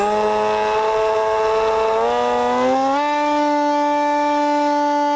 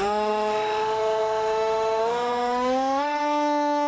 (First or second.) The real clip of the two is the first